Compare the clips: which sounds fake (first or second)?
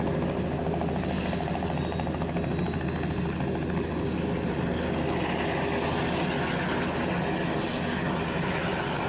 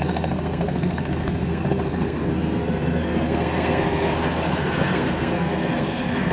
second